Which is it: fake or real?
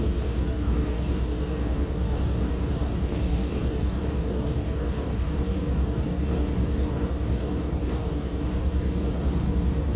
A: fake